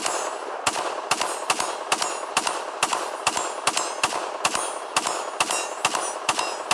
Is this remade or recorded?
recorded